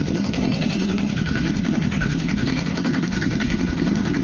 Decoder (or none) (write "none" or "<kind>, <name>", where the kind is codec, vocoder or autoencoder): codec, SNAC